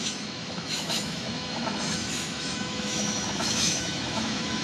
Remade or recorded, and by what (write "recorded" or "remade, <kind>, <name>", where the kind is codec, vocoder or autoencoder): remade, autoencoder, DAC-VAE